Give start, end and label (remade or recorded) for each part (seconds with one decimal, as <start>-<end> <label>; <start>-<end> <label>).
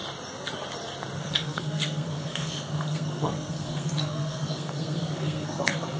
0.0-1.2 recorded; 1.2-6.0 remade